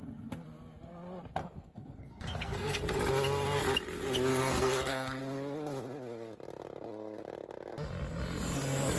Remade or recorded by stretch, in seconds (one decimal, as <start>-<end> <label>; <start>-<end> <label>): 0.0-1.4 recorded; 1.4-2.8 remade; 2.8-4.3 recorded; 4.3-5.2 remade; 5.2-9.0 recorded